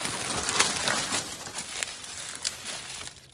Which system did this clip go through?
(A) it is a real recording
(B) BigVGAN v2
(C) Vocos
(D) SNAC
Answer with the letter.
A